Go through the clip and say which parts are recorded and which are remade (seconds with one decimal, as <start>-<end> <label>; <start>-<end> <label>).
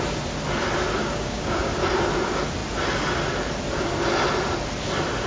0.0-1.0 recorded; 1.0-1.7 remade; 1.7-5.3 recorded